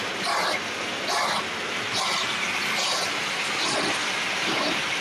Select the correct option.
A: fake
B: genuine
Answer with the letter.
B